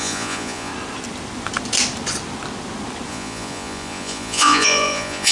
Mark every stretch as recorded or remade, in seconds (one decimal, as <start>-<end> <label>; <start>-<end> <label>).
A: 0.0-0.7 remade; 0.7-3.1 recorded; 3.1-5.3 remade